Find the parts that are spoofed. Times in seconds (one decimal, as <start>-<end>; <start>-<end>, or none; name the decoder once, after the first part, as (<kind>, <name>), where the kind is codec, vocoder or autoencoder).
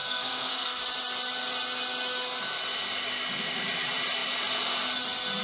0.0-0.8 (codec, SNAC)